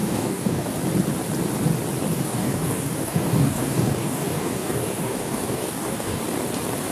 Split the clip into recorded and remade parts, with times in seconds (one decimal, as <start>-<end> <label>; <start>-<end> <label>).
0.0-0.7 remade; 0.7-2.1 recorded; 2.1-6.2 remade; 6.2-6.9 recorded